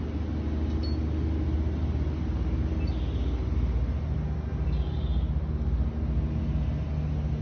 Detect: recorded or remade recorded